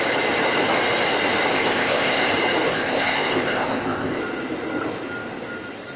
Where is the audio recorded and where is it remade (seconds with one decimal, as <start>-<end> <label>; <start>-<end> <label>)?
0.0-1.5 recorded; 1.5-2.3 remade; 2.3-2.7 recorded; 2.7-4.2 remade; 4.2-6.0 recorded